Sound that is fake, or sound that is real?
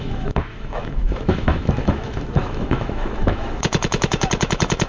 fake